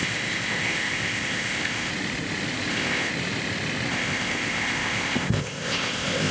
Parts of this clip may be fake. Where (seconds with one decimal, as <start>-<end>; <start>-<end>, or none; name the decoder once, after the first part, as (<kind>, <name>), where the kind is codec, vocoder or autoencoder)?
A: 0.0-1.9 (codec, ZipCodec); 2.7-3.1; 3.9-6.3